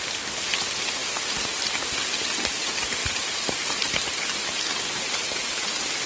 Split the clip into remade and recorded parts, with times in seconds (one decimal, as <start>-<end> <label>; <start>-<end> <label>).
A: 0.0-6.1 recorded